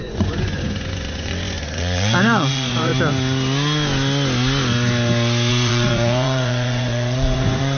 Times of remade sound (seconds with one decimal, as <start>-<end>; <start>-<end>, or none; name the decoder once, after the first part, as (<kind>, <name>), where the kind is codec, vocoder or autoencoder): 0.0-2.9 (vocoder, Vocos); 5.5-7.8